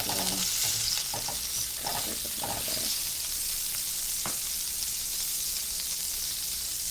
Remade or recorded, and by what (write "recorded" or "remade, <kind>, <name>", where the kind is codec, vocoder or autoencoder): recorded